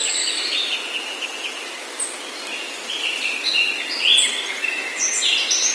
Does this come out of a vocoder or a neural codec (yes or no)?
no